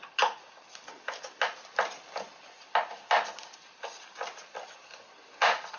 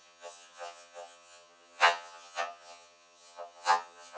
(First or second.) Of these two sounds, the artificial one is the second